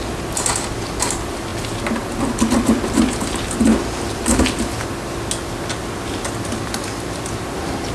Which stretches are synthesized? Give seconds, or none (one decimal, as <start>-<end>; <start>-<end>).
none